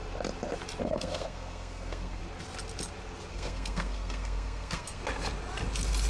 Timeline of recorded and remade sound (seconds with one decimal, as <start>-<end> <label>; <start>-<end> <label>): 0.0-0.8 recorded; 0.8-2.2 remade; 2.2-3.3 recorded; 3.3-5.0 remade; 5.0-6.1 recorded